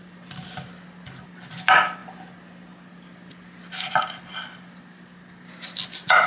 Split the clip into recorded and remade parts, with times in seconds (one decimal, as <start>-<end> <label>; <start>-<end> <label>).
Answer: 0.0-6.3 recorded

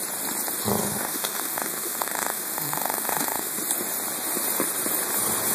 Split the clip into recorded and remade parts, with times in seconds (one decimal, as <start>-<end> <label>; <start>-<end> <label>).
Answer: 0.0-0.8 recorded; 0.8-3.6 remade; 3.6-5.5 recorded

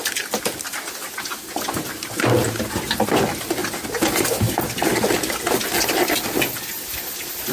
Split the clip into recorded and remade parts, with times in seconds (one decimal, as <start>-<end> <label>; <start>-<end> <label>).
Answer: 0.0-7.5 recorded

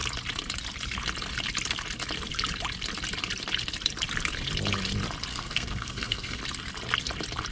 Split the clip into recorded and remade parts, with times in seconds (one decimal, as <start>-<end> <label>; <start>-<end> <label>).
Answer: 0.0-5.3 recorded; 5.3-6.4 remade; 6.4-7.5 recorded

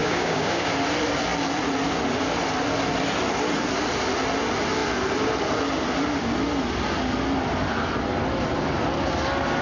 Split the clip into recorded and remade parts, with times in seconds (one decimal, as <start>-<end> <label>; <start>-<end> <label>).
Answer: 0.0-0.7 remade; 0.7-9.6 recorded

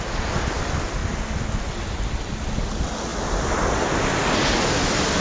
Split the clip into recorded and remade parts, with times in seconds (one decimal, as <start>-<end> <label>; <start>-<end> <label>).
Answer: 0.0-5.2 recorded

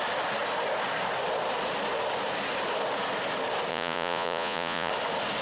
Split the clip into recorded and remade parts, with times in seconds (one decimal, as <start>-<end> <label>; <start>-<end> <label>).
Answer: 0.0-3.7 recorded; 3.7-4.9 remade; 4.9-5.4 recorded

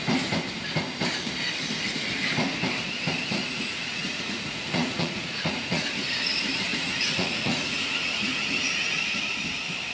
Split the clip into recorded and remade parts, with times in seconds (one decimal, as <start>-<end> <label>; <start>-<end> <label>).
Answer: 0.0-3.4 recorded; 3.4-5.9 remade; 5.9-6.7 recorded; 6.7-8.9 remade; 8.9-9.9 recorded